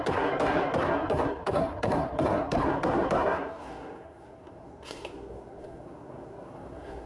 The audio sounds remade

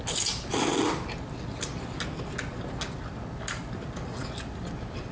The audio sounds recorded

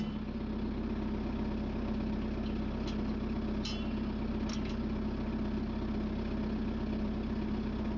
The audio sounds recorded